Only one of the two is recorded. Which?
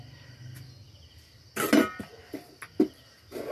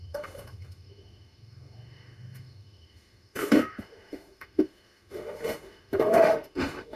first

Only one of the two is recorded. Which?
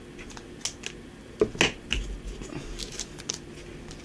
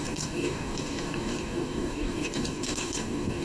first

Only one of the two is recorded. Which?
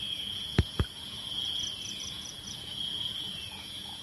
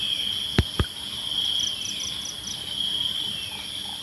second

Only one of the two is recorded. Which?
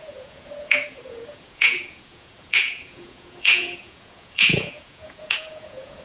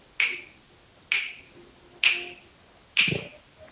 second